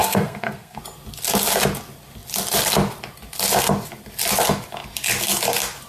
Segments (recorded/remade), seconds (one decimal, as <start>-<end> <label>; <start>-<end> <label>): 0.0-0.8 remade; 0.8-5.9 recorded